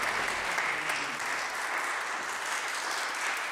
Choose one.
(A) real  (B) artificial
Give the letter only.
A